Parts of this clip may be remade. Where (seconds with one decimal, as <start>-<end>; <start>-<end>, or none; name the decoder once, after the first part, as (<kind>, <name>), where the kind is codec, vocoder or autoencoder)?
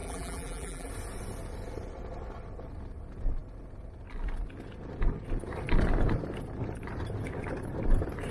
0.0-0.9 (vocoder, BigVGAN v2)